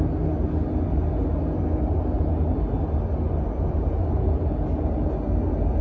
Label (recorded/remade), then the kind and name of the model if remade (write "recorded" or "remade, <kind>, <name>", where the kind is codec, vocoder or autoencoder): recorded